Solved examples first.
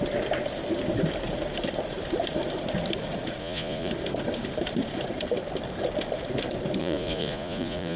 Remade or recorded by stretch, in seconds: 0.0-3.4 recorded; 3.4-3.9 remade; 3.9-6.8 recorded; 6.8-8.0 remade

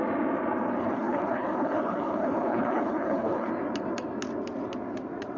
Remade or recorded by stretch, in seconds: 0.0-0.8 recorded; 0.8-3.5 remade; 3.5-5.4 recorded

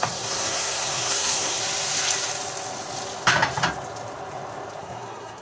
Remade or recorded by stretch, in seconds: 0.0-1.6 remade; 1.6-4.8 recorded; 4.8-5.4 remade

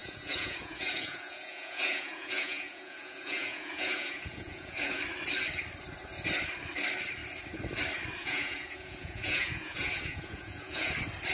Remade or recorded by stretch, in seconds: 0.0-5.0 remade; 5.0-8.2 recorded; 8.2-10.9 remade; 10.9-11.3 recorded

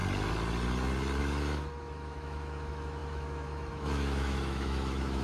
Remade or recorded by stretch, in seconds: 0.0-1.2 recorded; 1.2-5.2 remade

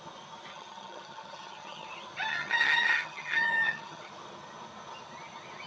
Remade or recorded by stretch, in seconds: 0.0-0.5 recorded; 0.5-1.9 remade; 1.9-2.3 recorded; 2.3-4.1 remade; 4.1-5.7 recorded

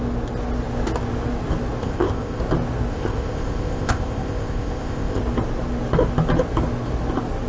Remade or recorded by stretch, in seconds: 0.0-1.8 recorded; 1.8-2.4 remade; 2.4-2.9 recorded; 2.9-5.2 remade; 5.2-7.5 recorded